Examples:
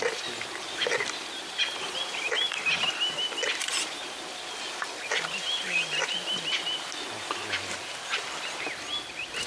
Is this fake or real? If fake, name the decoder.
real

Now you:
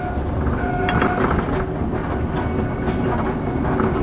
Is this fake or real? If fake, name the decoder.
real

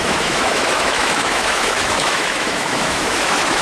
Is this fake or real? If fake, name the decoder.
fake, autoencoder, DAC-VAE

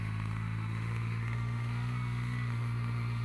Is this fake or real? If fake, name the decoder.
fake, autoencoder, DAC-VAE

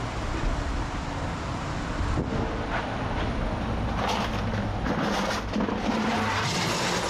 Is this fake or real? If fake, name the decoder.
real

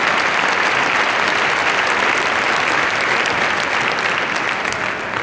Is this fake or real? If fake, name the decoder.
real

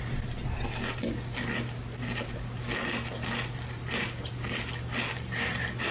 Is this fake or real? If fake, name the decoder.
real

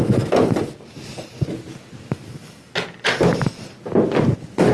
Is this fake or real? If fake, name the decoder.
real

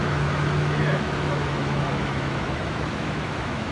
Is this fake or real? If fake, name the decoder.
fake, autoencoder, DAC-VAE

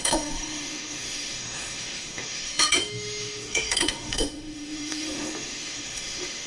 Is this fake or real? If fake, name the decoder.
fake, autoencoder, DAC-VAE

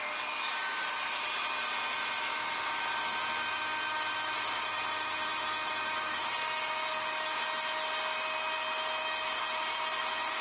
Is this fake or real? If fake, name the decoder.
real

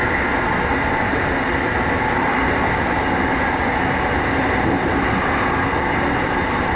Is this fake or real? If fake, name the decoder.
real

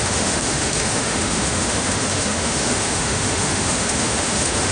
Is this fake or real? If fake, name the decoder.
fake, autoencoder, DAC-VAE